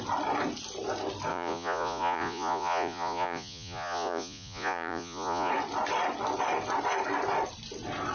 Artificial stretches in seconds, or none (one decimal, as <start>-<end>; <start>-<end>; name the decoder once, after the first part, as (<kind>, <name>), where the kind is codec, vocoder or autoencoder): 1.3-5.5 (vocoder, Vocos)